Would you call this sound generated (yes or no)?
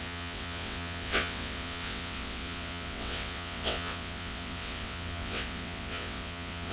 yes